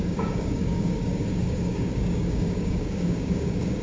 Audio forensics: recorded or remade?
remade